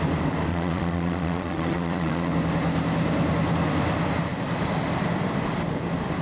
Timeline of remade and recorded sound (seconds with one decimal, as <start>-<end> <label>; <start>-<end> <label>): 0.0-0.5 recorded; 0.5-2.3 remade; 2.3-6.2 recorded